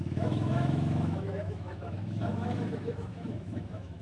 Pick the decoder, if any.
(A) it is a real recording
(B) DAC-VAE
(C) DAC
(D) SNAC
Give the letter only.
B